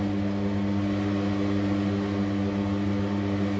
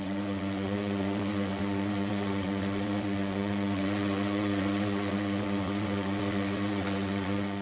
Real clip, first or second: first